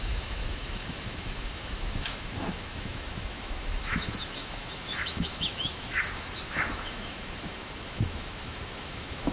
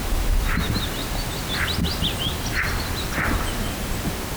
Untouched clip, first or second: second